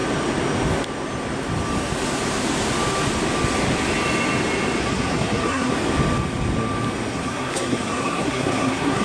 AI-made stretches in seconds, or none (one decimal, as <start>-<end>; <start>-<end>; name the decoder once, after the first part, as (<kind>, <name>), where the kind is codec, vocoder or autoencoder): 4.8-5.7 (codec, SNAC); 7.1-9.0